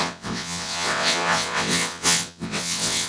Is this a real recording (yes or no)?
no